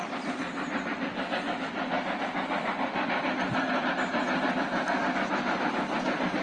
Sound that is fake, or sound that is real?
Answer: real